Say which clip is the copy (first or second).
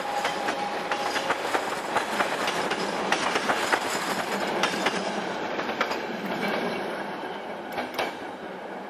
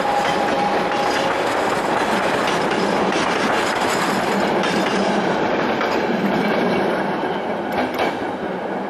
first